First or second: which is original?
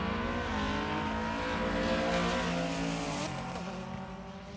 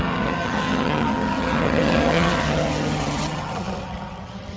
first